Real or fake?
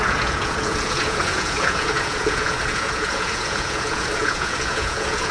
fake